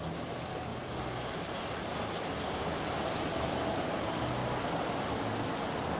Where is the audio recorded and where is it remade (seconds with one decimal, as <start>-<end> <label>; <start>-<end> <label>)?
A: 0.0-6.0 recorded